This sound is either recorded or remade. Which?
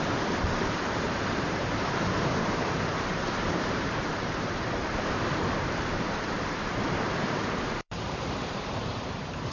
remade